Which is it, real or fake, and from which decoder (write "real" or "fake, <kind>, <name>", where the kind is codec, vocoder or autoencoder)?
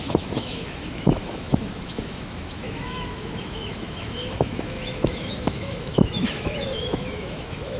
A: fake, autoencoder, DAC-VAE